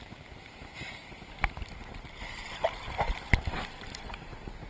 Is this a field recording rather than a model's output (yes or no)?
yes